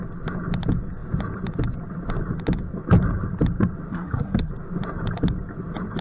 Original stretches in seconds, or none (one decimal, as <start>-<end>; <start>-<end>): 0.0-3.9; 4.5-6.0